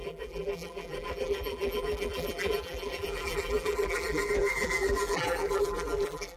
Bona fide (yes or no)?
no